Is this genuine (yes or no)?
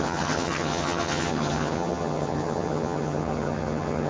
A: no